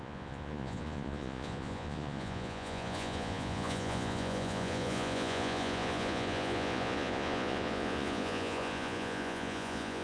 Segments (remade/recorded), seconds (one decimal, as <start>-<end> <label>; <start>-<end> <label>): 0.0-10.0 remade